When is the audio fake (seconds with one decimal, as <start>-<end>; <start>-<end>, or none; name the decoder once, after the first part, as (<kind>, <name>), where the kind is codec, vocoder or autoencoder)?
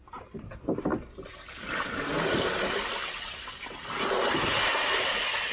none